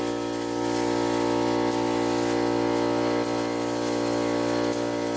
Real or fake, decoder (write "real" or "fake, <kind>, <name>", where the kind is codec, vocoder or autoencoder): real